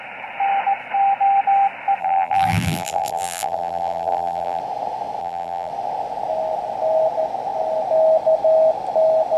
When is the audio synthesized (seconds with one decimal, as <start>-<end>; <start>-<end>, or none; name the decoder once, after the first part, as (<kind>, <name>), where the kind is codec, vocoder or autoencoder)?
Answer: 2.0-4.6 (vocoder, BigVGAN v2); 5.2-5.7